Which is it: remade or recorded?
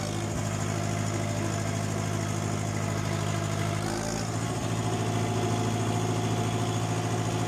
recorded